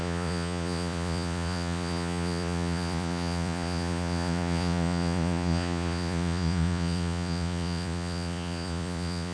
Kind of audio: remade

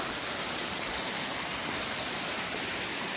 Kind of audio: recorded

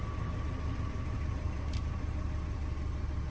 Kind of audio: recorded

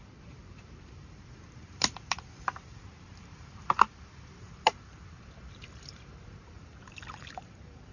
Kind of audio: remade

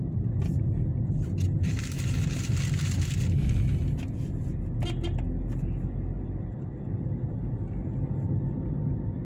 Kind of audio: recorded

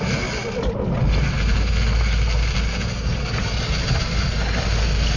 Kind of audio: recorded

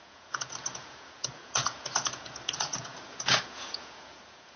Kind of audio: remade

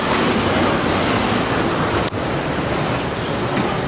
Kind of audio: recorded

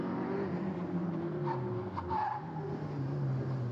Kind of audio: recorded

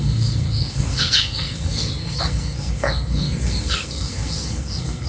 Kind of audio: remade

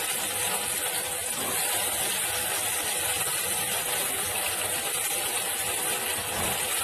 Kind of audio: recorded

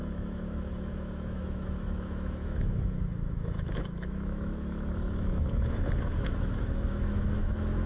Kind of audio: remade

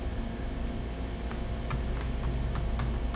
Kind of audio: recorded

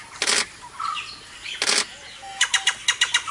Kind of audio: recorded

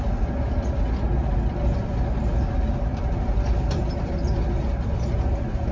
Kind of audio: recorded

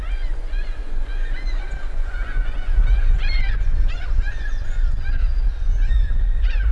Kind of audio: remade